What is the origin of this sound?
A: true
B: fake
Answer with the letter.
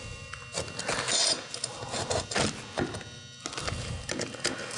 A